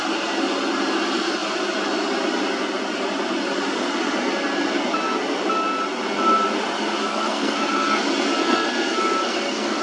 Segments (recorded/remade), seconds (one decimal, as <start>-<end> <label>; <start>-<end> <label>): 0.0-7.1 recorded; 7.1-8.0 remade; 8.0-8.4 recorded; 8.4-9.8 remade